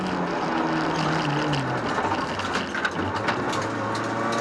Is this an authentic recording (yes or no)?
yes